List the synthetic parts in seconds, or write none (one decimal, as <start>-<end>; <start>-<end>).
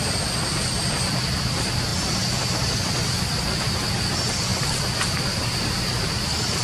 4.5-6.6